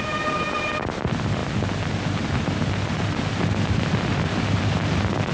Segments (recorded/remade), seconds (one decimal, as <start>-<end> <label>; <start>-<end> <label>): 0.0-5.3 recorded

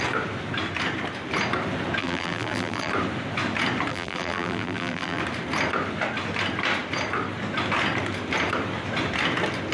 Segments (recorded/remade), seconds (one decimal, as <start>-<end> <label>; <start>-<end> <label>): 0.0-2.0 recorded; 2.0-2.9 remade; 2.9-3.9 recorded; 3.9-5.2 remade; 5.2-9.7 recorded

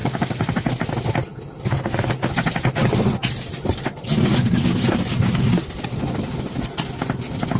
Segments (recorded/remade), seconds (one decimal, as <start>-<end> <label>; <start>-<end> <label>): 0.0-0.7 remade; 0.7-7.6 recorded

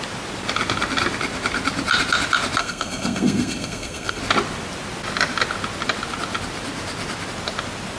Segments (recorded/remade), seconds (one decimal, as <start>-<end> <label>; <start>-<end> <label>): 0.0-2.6 recorded; 2.6-4.2 remade; 4.2-8.0 recorded

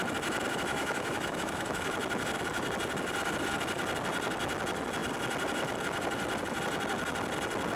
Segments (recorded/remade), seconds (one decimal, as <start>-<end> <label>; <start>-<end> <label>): 0.0-0.7 recorded; 0.7-1.9 remade; 1.9-7.8 recorded